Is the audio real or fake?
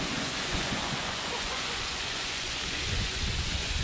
fake